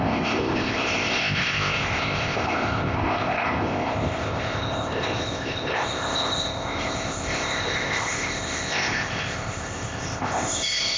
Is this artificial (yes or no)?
yes